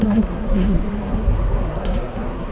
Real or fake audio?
fake